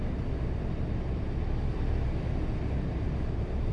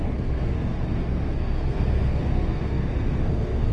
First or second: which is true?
first